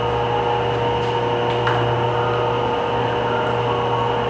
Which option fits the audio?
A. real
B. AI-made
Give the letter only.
A